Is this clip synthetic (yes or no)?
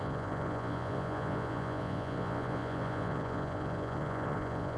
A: yes